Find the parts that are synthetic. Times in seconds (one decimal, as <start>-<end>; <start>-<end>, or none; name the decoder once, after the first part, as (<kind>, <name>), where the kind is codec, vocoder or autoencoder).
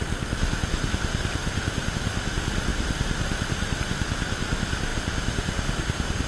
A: 1.4-1.9 (vocoder, BigVGAN v2); 4.9-6.3